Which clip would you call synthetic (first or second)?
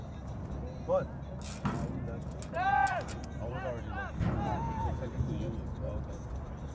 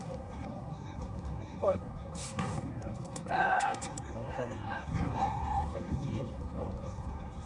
second